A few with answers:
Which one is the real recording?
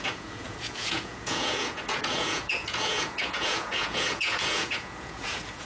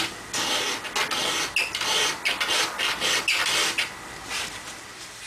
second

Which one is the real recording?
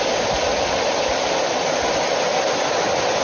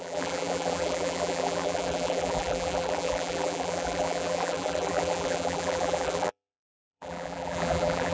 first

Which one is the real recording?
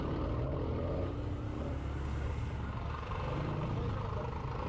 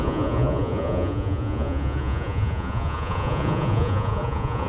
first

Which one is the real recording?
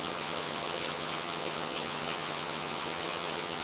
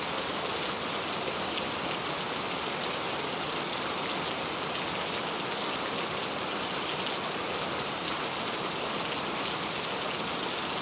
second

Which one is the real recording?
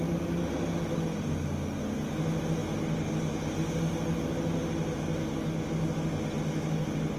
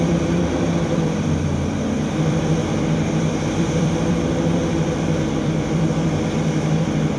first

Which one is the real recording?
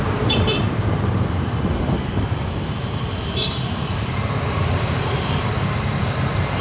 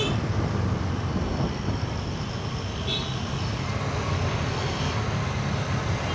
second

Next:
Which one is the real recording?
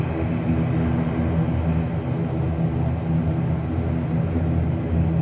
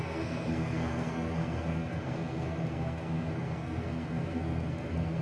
first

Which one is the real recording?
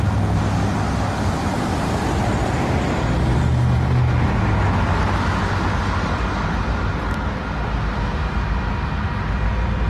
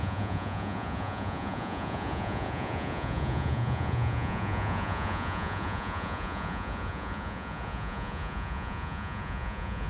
first